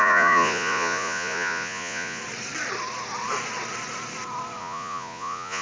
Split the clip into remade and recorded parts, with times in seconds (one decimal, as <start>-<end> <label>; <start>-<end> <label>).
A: 0.0-2.2 remade; 2.2-4.6 recorded; 4.6-5.6 remade